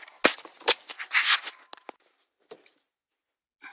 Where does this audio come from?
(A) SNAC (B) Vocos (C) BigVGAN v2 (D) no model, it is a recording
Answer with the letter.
D